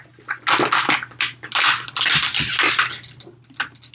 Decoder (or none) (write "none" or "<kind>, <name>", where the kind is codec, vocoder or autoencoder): none